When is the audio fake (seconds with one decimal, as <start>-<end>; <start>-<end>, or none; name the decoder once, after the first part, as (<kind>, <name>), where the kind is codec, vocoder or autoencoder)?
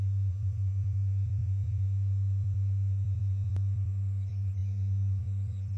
0.0-4.6 (vocoder, BigVGAN v2); 5.2-5.8